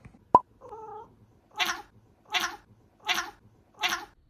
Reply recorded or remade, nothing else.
recorded